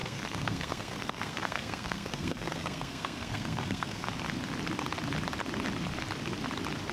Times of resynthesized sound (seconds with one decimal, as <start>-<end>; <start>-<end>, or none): 0.0-4.1